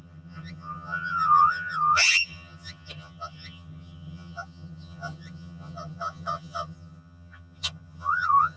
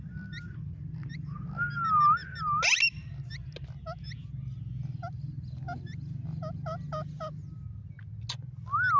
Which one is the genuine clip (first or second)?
second